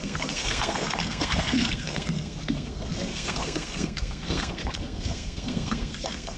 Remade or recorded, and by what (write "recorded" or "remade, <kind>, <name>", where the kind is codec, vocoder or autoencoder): remade, codec, SNAC